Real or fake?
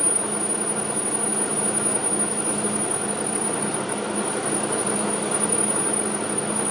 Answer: real